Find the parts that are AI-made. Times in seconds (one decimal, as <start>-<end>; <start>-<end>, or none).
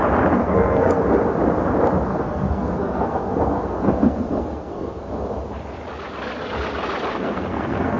0.4-1.0; 2.1-5.1; 7.1-8.0